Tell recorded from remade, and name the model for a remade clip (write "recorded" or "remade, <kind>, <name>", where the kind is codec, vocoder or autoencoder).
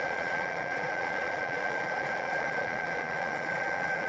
remade, vocoder, Vocos